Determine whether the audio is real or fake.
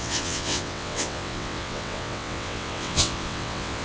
fake